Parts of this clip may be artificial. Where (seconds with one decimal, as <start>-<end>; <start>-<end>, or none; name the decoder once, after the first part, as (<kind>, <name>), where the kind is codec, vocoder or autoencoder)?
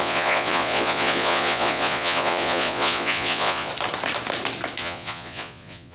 0.0-3.7 (vocoder, Vocos); 4.8-5.9